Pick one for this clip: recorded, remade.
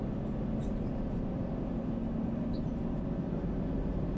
recorded